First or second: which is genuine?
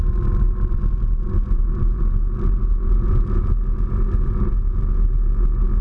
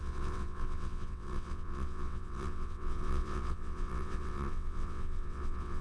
first